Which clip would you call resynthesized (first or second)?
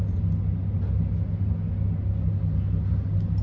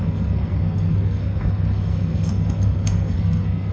second